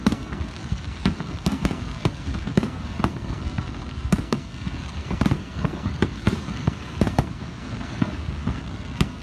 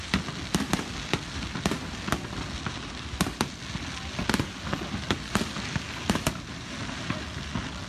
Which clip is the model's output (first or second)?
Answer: first